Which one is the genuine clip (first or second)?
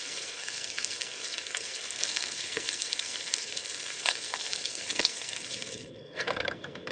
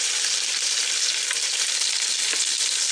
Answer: second